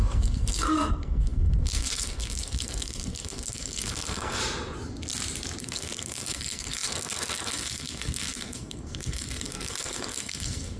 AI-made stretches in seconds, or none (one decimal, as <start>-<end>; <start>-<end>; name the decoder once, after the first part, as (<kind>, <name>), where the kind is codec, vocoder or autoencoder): 0.0-4.4 (codec, SNAC); 5.6-10.8